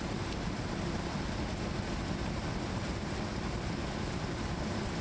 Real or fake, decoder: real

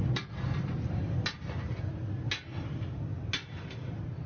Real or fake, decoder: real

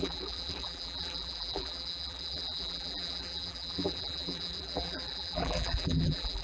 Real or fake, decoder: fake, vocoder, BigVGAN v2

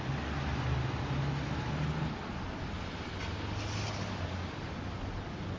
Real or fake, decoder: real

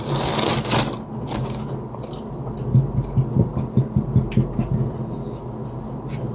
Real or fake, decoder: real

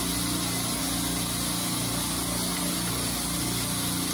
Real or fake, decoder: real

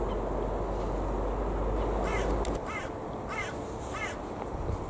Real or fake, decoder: real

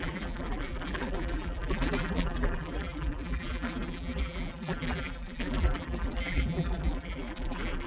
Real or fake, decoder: fake, vocoder, BigVGAN v2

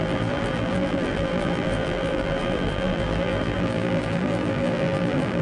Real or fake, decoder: fake, vocoder, BigVGAN v2